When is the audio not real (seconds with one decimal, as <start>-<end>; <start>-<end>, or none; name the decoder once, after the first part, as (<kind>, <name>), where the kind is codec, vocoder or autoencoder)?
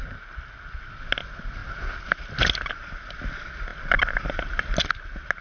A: none